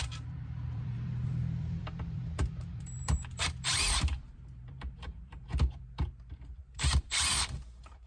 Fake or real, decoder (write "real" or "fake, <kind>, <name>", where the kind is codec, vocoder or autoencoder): fake, vocoder, BigVGAN v2